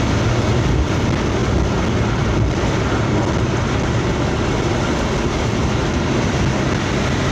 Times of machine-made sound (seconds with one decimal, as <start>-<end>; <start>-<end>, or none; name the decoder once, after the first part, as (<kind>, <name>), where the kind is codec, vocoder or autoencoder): none